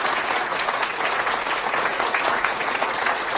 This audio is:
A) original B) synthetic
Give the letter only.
B